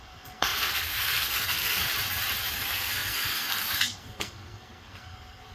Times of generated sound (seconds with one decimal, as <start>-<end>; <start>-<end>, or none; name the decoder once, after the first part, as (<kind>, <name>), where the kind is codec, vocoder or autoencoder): 0.0-1.9 (codec, SNAC); 2.5-5.5